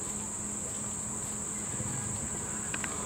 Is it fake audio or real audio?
real